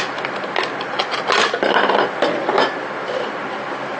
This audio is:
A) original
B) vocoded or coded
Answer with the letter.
A